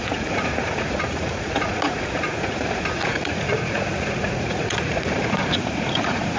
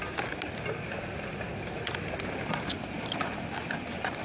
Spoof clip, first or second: first